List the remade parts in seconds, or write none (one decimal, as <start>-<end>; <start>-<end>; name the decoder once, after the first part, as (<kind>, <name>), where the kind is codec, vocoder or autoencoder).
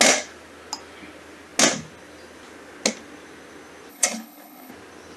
3.9-4.7 (codec, HILCodec)